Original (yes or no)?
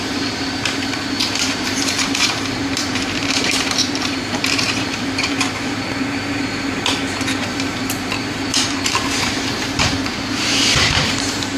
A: no